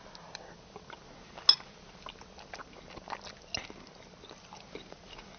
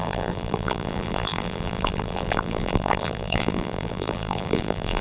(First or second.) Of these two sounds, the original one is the first